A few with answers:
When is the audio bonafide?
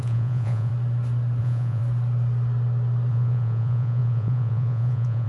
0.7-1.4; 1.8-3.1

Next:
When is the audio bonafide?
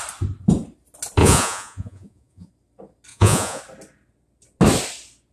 0.0-1.2; 2.5-3.1; 3.6-5.3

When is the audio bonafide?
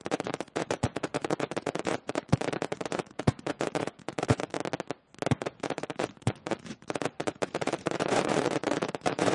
4.6-5.3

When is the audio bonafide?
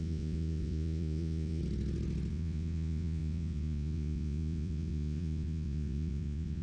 1.6-2.3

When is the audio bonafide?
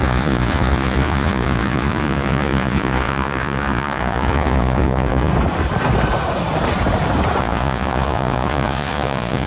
5.3-7.4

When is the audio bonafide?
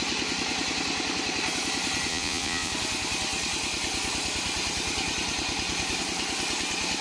0.0-2.1; 2.7-7.0